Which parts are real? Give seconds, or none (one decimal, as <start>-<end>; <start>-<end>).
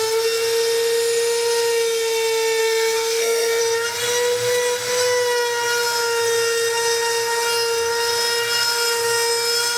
0.0-2.6; 3.6-9.8